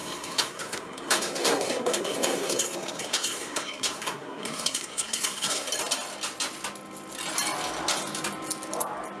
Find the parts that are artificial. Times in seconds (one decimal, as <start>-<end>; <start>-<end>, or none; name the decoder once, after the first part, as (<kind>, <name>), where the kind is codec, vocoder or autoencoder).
0.0-5.7 (codec, SNAC)